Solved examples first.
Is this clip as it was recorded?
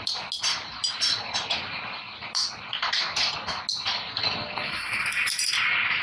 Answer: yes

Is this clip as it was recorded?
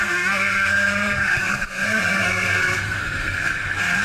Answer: no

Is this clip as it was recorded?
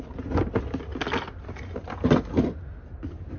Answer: yes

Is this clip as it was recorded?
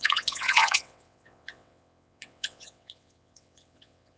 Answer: no